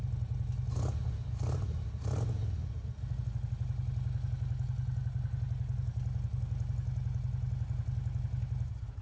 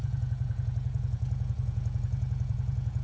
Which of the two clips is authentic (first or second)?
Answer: first